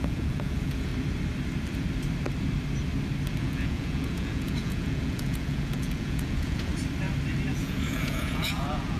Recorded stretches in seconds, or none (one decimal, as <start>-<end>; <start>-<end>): 0.9-3.4; 6.7-7.5